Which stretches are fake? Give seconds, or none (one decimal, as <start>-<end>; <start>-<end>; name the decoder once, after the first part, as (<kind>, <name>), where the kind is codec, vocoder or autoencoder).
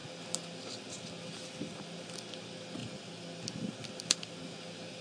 none